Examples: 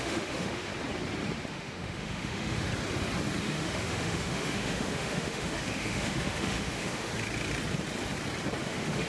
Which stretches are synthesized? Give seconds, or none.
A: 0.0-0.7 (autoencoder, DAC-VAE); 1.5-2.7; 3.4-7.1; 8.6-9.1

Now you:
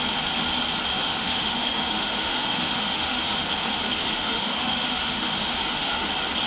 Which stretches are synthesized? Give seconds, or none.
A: 0.9-3.4 (autoencoder, DAC-VAE); 4.0-6.1